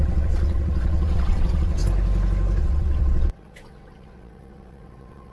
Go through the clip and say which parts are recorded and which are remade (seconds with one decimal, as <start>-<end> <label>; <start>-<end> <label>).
0.0-1.8 remade; 1.8-2.6 recorded; 2.6-5.3 remade